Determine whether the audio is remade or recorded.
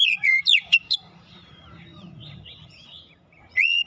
remade